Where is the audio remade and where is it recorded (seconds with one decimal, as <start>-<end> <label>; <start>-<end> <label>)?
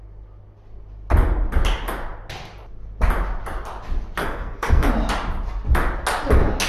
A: 0.0-4.2 recorded; 4.2-4.9 remade; 4.9-6.7 recorded